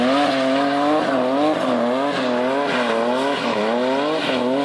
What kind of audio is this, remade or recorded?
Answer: recorded